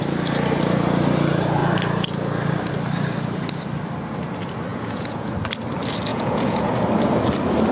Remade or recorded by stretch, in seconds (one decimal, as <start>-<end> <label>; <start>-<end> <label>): 0.0-4.7 recorded; 4.7-5.3 remade; 5.3-6.1 recorded; 6.1-6.7 remade; 6.7-7.7 recorded